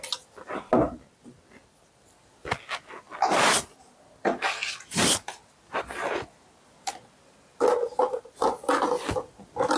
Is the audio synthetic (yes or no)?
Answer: no